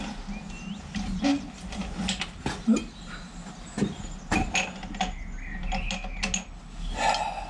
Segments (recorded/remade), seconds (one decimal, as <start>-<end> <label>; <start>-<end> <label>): 0.0-7.5 recorded